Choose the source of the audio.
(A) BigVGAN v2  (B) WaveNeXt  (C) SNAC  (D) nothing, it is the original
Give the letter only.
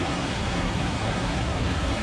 C